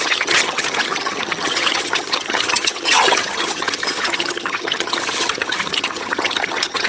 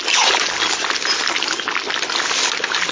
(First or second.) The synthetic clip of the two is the first